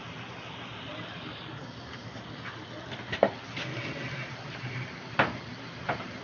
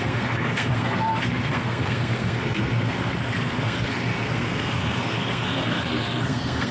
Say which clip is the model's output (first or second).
second